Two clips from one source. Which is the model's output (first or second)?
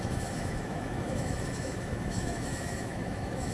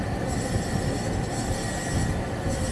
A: first